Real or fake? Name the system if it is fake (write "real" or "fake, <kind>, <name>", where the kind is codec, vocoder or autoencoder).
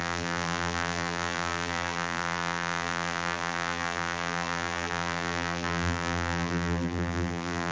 fake, vocoder, BigVGAN v2